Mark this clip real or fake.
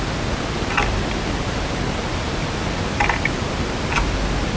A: real